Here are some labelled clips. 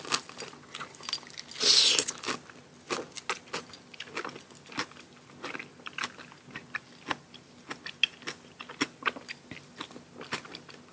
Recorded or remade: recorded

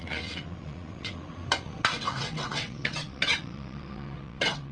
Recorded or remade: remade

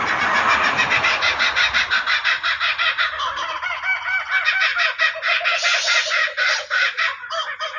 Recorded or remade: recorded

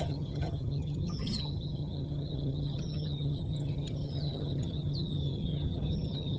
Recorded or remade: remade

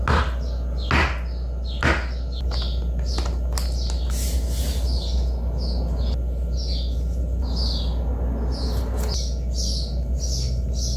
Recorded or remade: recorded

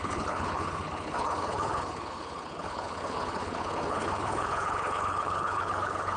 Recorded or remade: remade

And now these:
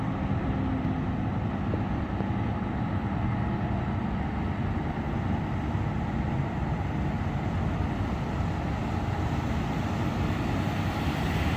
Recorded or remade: recorded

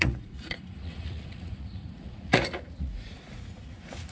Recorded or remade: remade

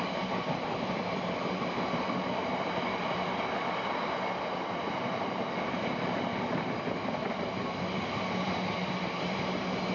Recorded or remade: recorded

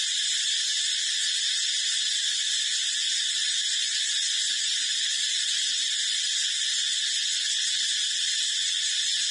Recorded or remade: recorded